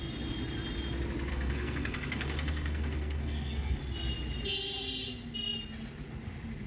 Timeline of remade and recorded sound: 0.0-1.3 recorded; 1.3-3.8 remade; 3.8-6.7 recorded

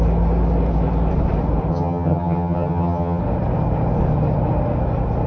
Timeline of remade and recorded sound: 0.0-1.7 recorded; 1.7-3.2 remade; 3.2-5.3 recorded

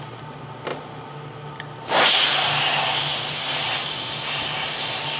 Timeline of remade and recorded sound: 0.0-5.2 recorded

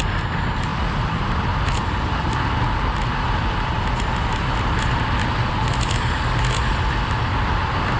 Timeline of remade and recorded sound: 0.0-8.0 recorded

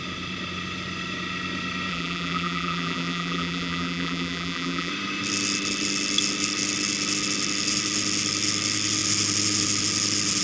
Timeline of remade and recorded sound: 0.0-1.9 recorded; 1.9-4.9 remade; 4.9-10.4 recorded

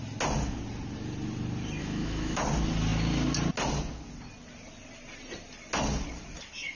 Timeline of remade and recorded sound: 0.0-1.8 recorded; 1.8-2.4 remade; 2.4-6.7 recorded